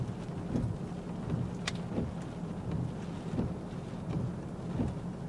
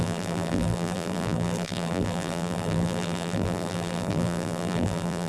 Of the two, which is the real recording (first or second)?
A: first